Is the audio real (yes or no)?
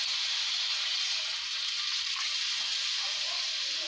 no